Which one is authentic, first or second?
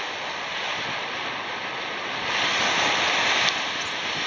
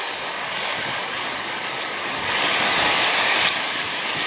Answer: first